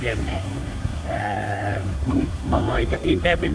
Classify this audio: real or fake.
fake